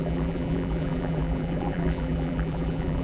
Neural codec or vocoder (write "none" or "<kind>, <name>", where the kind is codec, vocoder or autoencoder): vocoder, BigVGAN v2